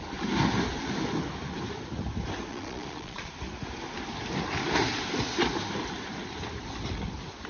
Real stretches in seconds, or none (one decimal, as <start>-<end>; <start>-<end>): 0.0-2.5; 3.3-7.5